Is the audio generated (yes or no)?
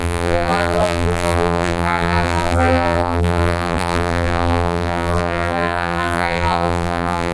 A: yes